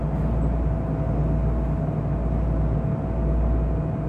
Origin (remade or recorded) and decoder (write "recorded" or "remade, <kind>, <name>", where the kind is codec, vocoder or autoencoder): recorded